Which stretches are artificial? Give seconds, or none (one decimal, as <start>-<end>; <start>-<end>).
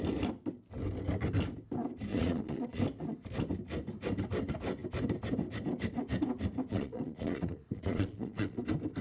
2.1-2.8; 6.7-8.6